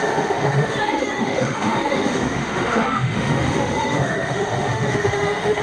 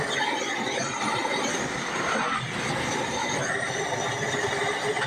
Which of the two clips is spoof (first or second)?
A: first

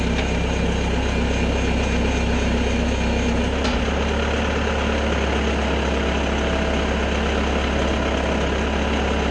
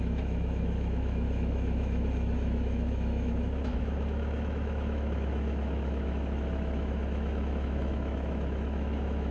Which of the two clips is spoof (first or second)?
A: second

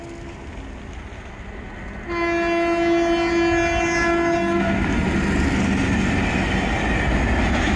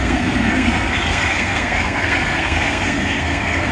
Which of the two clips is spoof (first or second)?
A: second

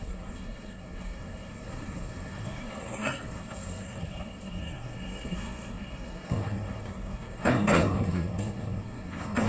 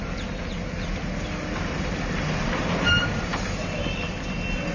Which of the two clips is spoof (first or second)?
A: first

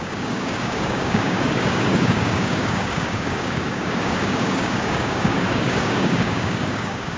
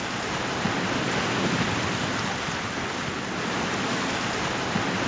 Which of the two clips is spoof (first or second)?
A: first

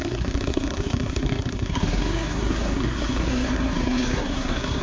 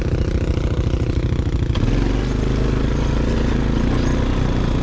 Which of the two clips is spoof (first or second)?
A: first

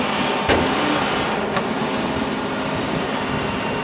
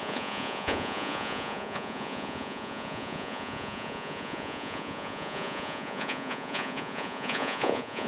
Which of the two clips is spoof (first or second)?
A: second